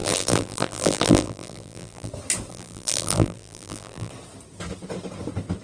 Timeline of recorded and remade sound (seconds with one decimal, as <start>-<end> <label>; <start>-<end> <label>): 0.0-2.1 remade; 2.1-2.5 recorded; 2.5-4.1 remade; 4.1-5.6 recorded

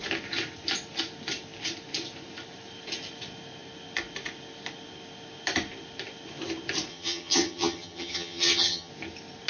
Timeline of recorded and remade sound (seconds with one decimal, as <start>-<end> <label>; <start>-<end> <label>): 0.0-6.9 recorded; 6.9-8.9 remade; 8.9-9.5 recorded